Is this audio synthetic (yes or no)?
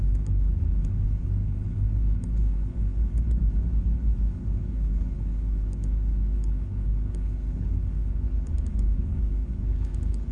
yes